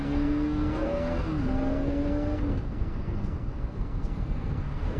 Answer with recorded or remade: remade